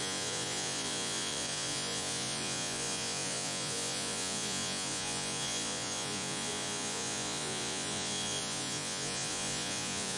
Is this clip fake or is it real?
fake